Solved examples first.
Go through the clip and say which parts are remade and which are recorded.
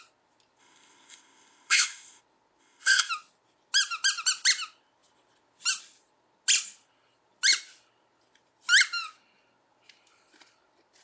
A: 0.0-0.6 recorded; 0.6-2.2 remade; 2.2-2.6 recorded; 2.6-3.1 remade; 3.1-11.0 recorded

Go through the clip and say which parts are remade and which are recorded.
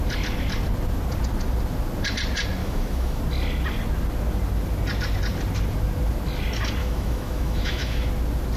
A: 0.0-2.6 recorded; 2.6-3.2 remade; 3.2-6.8 recorded; 6.8-8.1 remade; 8.1-8.6 recorded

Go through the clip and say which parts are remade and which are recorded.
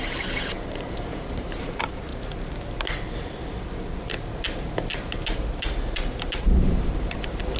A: 0.0-2.1 remade; 2.1-6.4 recorded; 6.4-7.6 remade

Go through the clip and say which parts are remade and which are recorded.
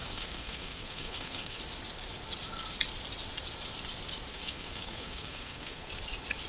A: 0.0-1.6 remade; 1.6-4.3 recorded; 4.3-5.9 remade; 5.9-6.5 recorded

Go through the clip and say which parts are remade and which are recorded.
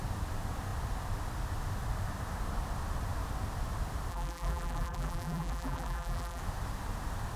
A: 0.0-4.1 recorded; 4.1-6.4 remade; 6.4-7.4 recorded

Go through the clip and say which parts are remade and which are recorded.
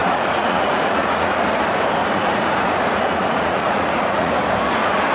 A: 0.0-1.3 remade; 1.3-2.0 recorded; 2.0-4.3 remade; 4.3-5.1 recorded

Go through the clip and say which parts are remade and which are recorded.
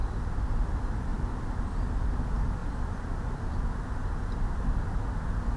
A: 0.0-0.5 remade; 0.5-1.1 recorded; 1.1-1.8 remade; 1.8-2.6 recorded; 2.6-5.6 remade